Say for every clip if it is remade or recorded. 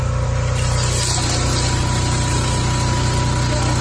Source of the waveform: recorded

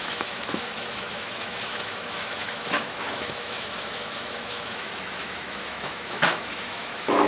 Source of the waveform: remade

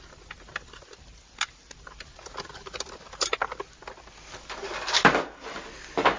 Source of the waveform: recorded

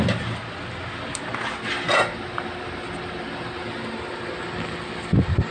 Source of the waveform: recorded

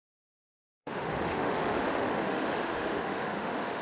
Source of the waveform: remade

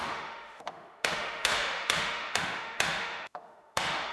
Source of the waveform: remade